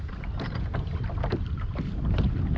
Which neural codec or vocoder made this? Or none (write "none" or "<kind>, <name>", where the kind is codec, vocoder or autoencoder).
vocoder, BigVGAN v2